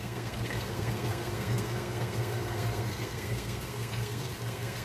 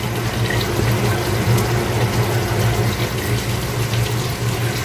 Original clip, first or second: second